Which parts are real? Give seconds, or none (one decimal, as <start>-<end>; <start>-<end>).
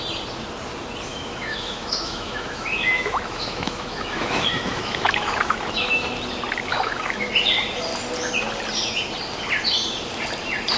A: 0.0-1.1; 6.1-6.7; 7.3-10.8